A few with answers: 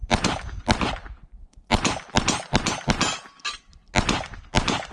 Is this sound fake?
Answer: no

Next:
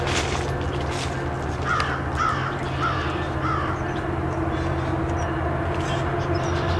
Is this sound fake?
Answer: no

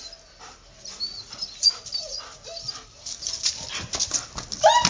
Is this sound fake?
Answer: no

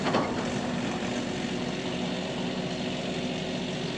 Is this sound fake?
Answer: no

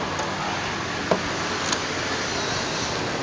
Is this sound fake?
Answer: no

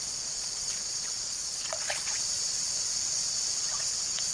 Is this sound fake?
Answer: yes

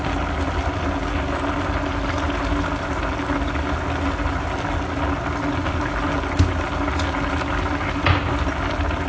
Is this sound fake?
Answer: no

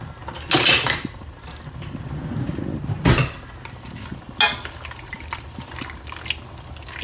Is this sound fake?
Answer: no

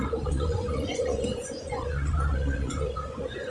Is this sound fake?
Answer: yes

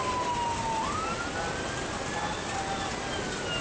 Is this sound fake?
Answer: no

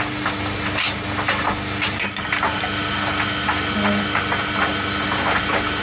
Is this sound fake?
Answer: no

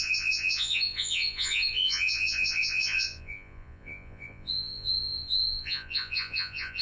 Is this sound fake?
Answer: yes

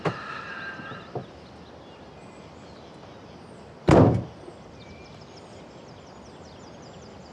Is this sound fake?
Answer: no